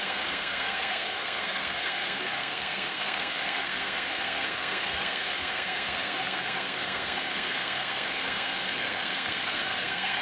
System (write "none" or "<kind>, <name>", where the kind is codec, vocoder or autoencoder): codec, SNAC